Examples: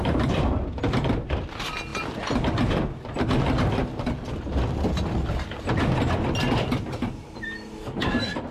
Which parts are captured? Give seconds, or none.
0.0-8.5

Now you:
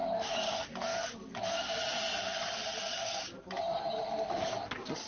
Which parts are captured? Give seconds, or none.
0.0-5.1

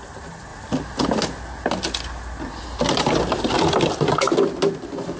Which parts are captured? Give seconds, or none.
0.0-5.2

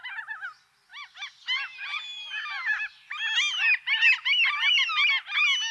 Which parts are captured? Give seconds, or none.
0.0-0.9; 1.4-5.7

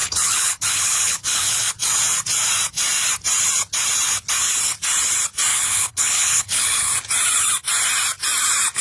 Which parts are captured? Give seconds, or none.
1.7-5.5; 6.9-8.8